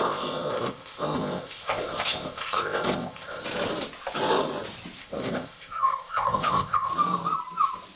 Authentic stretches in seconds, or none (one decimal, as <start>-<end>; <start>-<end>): 3.4-5.0; 6.9-8.0